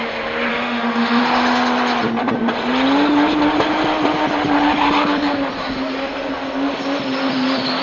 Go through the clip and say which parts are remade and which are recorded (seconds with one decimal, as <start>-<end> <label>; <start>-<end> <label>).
0.0-0.5 recorded; 0.5-1.2 remade; 1.2-7.8 recorded